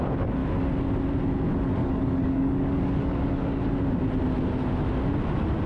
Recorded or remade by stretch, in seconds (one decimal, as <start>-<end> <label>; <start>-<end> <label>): 0.0-1.8 recorded; 1.8-3.6 remade; 3.6-5.7 recorded